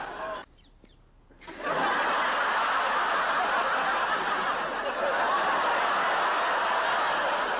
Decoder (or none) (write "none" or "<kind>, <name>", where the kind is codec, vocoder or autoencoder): none